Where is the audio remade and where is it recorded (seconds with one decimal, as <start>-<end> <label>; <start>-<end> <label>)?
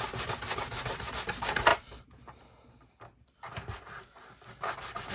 0.0-5.1 recorded